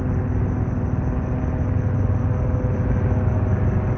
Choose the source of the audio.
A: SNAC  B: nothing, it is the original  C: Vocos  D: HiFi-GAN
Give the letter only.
B